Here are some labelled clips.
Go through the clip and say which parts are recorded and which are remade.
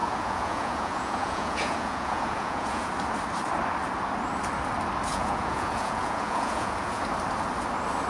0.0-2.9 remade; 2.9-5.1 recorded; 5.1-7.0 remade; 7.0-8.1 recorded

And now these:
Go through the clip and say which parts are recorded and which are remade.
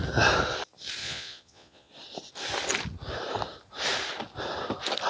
0.0-1.0 recorded; 1.0-1.9 remade; 1.9-5.1 recorded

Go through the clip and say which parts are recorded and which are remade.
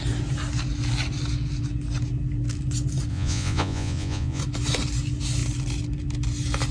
0.0-3.1 recorded; 3.1-4.4 remade; 4.4-6.7 recorded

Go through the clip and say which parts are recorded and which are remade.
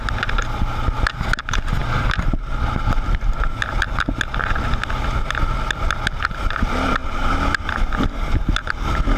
0.0-9.2 recorded